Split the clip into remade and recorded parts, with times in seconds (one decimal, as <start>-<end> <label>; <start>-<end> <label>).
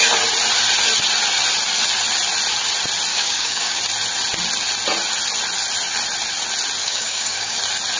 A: 0.0-3.1 recorded; 3.1-3.8 remade; 3.8-6.8 recorded; 6.8-7.6 remade; 7.6-8.0 recorded